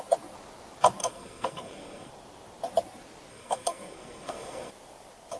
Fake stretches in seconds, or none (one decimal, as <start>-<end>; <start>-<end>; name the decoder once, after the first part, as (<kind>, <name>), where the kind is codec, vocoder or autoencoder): 1.0-2.1 (codec, SNAC); 3.3-4.7